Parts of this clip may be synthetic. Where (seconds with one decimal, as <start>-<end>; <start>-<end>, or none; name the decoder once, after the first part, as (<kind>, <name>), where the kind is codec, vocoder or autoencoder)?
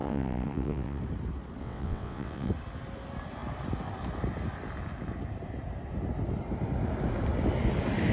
0.0-1.0 (vocoder, WaveNeXt); 1.6-2.5